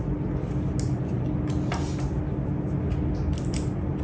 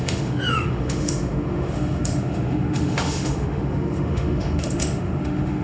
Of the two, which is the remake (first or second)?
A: second